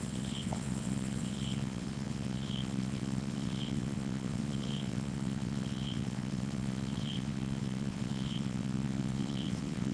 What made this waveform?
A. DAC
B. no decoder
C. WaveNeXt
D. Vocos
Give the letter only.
C